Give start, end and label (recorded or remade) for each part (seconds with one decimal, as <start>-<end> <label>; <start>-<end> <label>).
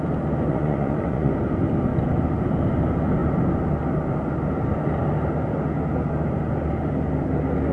0.0-0.5 recorded; 0.5-1.3 remade; 1.3-7.7 recorded